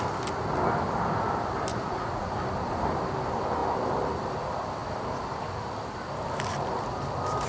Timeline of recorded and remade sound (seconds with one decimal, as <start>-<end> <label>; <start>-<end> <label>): 0.0-1.7 recorded; 1.7-2.3 remade; 2.3-7.5 recorded